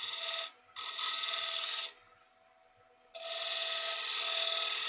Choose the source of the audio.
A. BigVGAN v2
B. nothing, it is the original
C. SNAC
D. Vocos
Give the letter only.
B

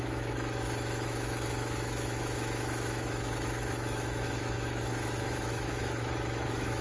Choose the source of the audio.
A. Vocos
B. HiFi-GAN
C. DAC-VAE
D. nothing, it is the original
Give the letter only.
C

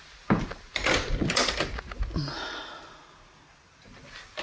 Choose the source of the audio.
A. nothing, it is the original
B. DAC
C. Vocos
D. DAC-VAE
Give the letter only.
A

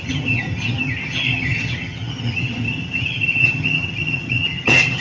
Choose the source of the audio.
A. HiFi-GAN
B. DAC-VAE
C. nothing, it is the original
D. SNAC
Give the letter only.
A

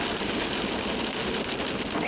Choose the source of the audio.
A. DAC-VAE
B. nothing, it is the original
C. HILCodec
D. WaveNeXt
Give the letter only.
B